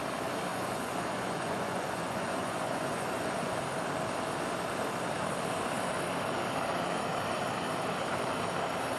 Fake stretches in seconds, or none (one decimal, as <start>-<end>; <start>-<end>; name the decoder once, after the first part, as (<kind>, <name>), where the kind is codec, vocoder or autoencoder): 0.5-3.6 (vocoder, Vocos)